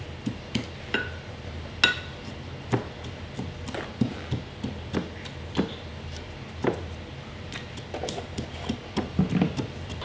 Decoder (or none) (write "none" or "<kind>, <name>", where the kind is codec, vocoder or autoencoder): none